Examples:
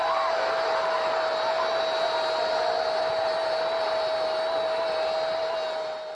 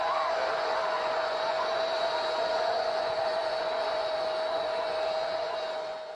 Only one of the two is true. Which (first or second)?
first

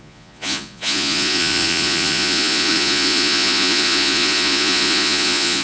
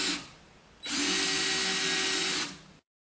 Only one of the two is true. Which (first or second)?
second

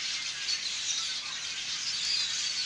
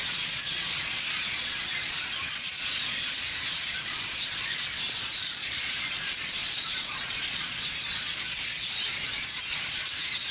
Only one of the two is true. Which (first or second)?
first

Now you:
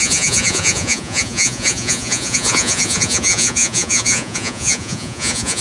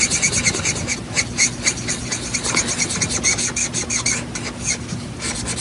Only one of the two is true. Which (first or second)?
second